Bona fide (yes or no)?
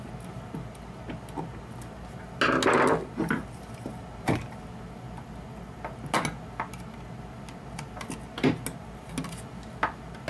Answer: yes